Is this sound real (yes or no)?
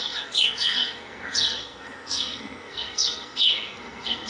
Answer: no